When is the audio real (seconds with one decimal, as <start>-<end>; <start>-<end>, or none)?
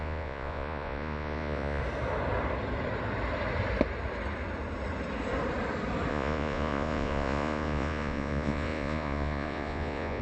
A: 1.8-6.1